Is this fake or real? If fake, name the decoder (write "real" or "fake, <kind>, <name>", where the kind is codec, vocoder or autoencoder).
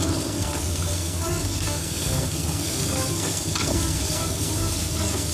fake, codec, SNAC